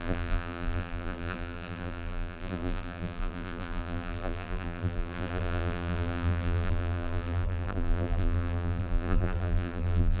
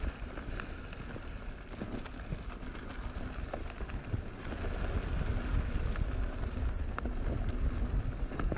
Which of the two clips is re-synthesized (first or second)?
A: first